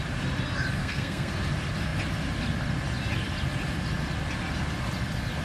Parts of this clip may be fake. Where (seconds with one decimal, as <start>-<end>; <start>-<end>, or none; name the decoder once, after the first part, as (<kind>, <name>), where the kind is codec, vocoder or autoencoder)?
0.8-1.3 (codec, SNAC)